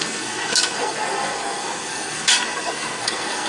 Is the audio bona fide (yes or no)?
no